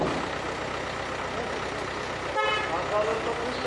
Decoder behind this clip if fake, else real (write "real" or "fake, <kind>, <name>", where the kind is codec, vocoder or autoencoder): real